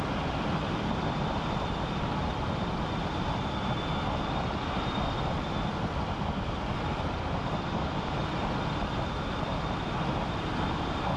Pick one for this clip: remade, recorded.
recorded